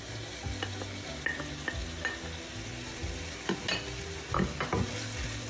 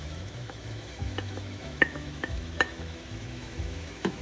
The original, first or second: first